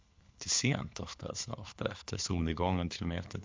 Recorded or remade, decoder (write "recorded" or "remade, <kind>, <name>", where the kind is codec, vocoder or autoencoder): remade, codec, HILCodec